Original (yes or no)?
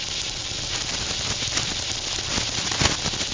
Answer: yes